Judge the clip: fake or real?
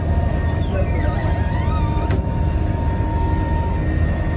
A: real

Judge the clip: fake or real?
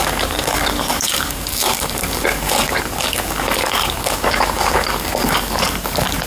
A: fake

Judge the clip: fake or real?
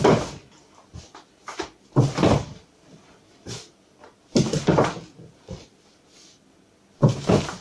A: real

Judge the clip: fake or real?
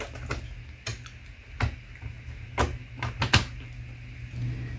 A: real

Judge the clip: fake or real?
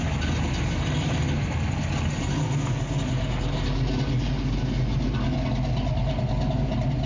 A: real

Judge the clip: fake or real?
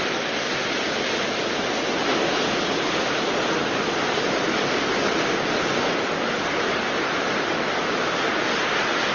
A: real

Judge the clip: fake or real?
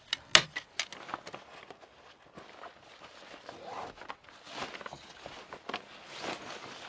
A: real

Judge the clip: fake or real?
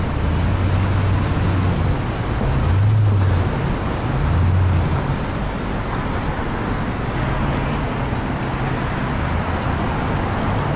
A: real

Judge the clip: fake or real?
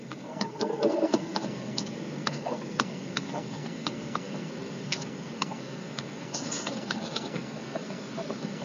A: fake